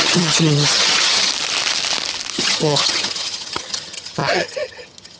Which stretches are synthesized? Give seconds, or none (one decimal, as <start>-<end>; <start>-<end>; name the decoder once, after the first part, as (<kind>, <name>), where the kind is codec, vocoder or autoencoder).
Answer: 0.0-1.3 (vocoder, HiFi-GAN); 2.3-5.2